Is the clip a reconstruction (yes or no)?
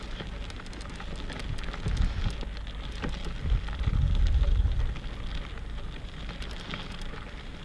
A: no